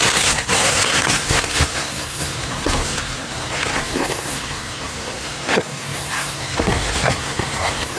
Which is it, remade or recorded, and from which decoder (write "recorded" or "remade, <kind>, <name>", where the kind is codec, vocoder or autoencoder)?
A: remade, codec, SNAC